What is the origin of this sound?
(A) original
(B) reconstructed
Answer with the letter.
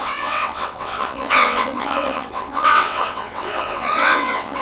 B